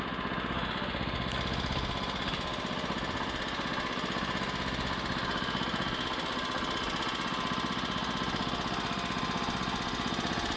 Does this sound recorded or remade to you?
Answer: recorded